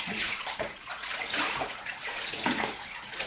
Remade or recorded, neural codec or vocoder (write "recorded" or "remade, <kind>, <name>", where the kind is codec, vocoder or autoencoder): remade, vocoder, Vocos